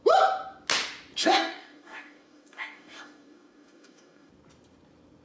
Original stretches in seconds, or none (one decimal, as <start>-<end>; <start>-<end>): 0.0-1.2; 4.3-5.2